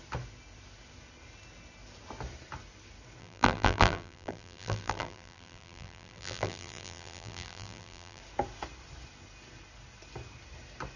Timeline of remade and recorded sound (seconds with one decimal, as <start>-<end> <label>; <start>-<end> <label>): 0.0-3.2 recorded; 3.2-8.2 remade; 8.2-11.0 recorded